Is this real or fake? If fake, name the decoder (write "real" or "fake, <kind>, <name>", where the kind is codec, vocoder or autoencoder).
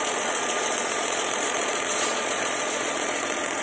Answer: fake, vocoder, Vocos